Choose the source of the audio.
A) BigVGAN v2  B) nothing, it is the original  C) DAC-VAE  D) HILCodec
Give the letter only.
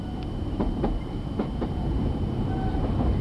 B